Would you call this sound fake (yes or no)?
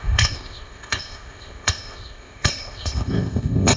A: yes